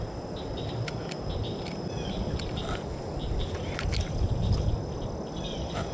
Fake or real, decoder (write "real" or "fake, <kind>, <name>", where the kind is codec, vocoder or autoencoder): real